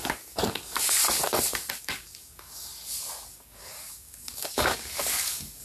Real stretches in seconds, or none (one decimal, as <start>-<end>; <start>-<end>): 1.0-1.7; 2.7-3.3